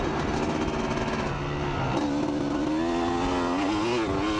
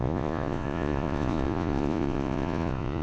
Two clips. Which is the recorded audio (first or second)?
first